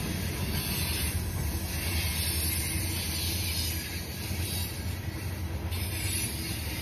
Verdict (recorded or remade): recorded